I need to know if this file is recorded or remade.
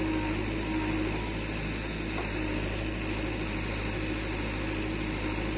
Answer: recorded